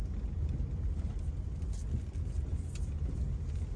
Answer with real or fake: real